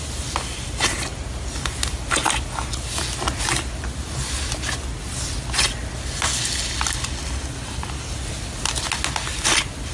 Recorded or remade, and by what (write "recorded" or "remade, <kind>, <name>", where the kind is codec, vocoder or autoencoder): recorded